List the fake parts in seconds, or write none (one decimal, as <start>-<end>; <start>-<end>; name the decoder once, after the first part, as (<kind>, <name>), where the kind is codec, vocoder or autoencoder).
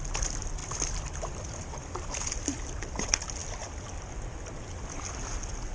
0.6-3.2 (vocoder, BigVGAN v2)